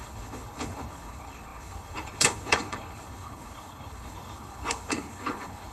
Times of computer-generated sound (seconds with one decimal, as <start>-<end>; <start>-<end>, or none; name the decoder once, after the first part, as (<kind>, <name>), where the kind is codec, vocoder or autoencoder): 0.0-5.7 (codec, HILCodec)